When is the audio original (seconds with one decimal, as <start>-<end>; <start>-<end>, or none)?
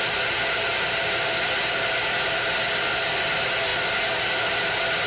0.0-5.1